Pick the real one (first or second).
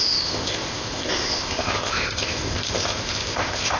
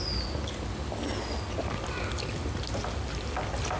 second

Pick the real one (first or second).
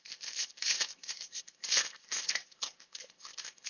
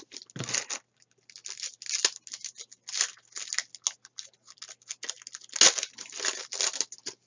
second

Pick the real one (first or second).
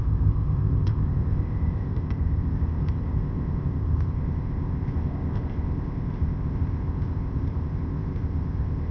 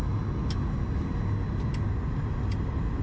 second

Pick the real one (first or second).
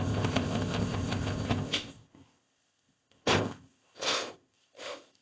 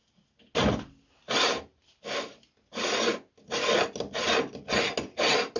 second